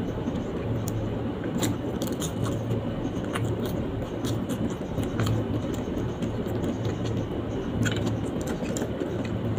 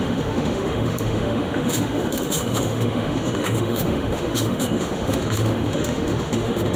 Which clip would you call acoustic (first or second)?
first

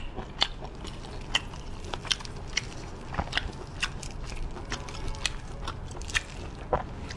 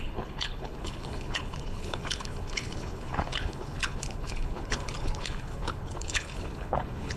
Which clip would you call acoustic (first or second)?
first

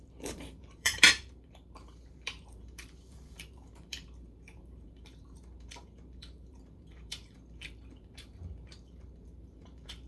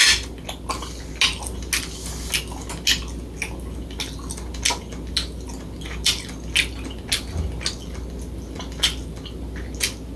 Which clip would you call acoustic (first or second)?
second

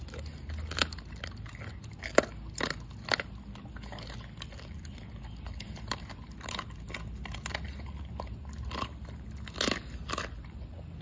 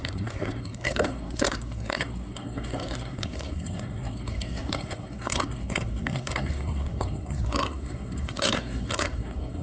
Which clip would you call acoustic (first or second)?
first